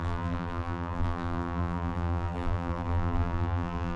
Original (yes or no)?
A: no